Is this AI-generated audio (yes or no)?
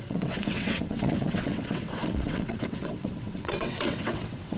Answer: yes